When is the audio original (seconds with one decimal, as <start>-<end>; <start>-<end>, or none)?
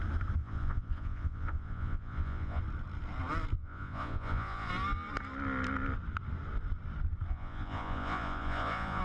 0.0-0.4; 2.6-3.6; 4.7-7.3